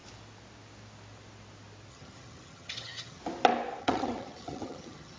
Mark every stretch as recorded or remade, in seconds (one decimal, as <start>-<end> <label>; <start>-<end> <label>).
0.0-1.9 recorded; 1.9-3.2 remade; 3.2-3.8 recorded; 3.8-5.2 remade